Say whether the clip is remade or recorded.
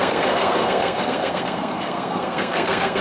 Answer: remade